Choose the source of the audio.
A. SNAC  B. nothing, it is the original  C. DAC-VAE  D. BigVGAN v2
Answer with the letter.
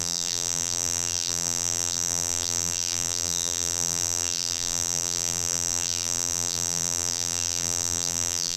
D